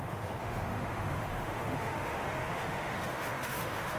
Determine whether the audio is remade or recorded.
remade